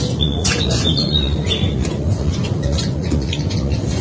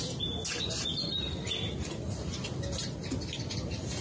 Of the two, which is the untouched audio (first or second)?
second